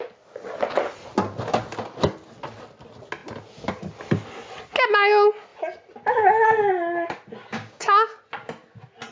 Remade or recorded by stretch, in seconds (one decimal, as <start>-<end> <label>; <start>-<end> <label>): 0.0-7.4 recorded; 7.4-8.2 remade; 8.2-9.1 recorded